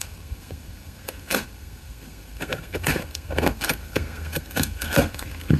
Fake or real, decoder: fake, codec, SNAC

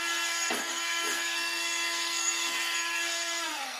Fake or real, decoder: fake, codec, SNAC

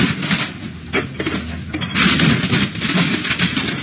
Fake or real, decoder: real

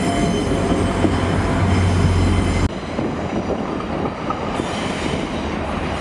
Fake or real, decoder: real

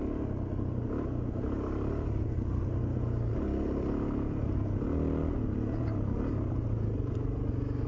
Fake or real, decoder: real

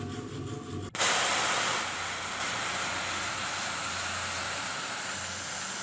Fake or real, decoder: real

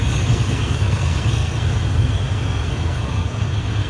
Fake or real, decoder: fake, codec, SNAC